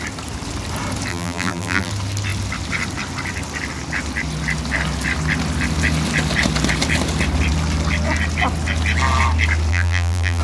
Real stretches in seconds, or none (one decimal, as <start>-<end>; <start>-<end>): 0.0-1.1; 1.9-9.7